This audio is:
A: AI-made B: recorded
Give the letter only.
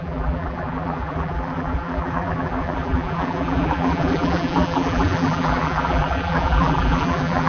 A